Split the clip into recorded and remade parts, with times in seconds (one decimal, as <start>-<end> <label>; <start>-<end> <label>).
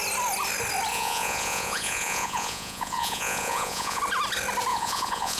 0.0-0.9 recorded; 0.9-4.0 remade; 4.0-4.7 recorded; 4.7-5.4 remade